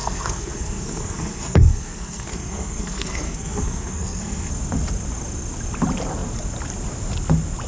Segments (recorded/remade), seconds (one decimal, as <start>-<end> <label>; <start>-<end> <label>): 0.0-4.5 remade; 4.5-7.7 recorded